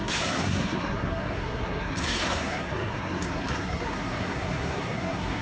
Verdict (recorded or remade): remade